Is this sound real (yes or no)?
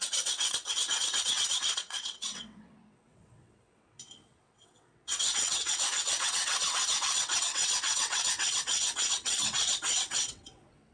no